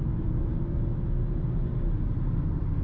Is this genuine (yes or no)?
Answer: yes